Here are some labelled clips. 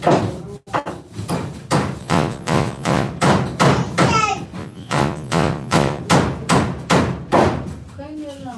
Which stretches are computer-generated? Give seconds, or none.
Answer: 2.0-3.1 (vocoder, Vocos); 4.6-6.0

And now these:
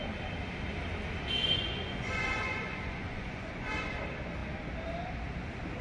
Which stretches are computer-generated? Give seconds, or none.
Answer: 1.4-4.0 (vocoder, Vocos)

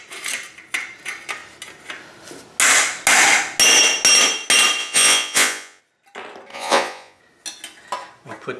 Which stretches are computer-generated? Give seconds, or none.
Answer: 4.8-5.8 (vocoder, Vocos); 6.5-7.2

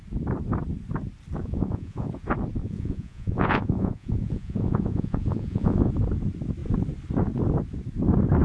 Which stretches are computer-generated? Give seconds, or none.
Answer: 1.4-2.1 (vocoder, Vocos); 2.6-5.9

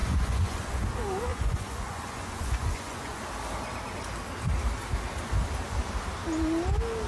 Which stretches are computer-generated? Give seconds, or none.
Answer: 0.0-0.8 (vocoder, Vocos); 1.3-3.2